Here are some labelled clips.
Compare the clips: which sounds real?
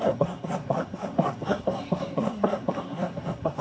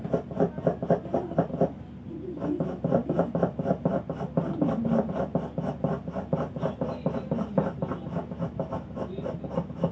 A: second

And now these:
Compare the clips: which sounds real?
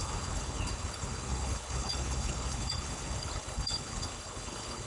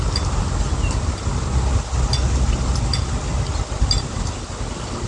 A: second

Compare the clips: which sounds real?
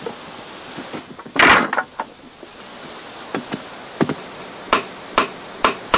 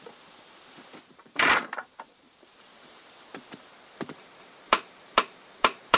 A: first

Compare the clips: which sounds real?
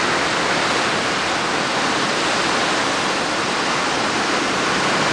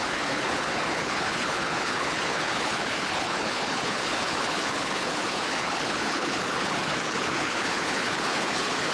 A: first